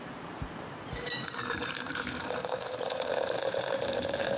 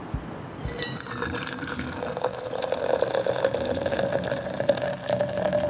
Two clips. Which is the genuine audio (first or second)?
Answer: second